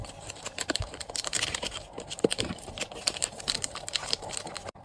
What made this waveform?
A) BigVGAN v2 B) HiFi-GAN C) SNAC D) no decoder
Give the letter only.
A